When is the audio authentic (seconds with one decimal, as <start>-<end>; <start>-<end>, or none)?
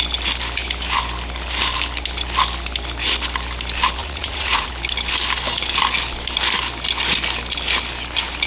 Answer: 0.0-4.0; 4.7-8.5